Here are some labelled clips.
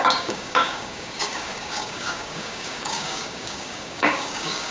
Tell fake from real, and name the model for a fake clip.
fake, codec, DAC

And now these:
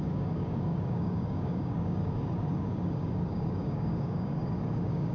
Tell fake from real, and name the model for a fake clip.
fake, codec, DAC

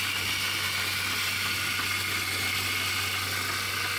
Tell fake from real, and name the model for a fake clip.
real